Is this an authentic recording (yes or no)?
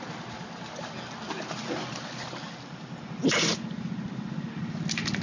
yes